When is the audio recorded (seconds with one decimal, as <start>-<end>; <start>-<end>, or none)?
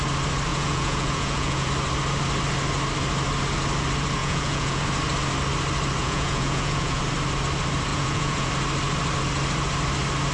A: 0.0-0.5; 1.7-4.2; 4.8-6.0; 7.0-7.9; 8.5-10.3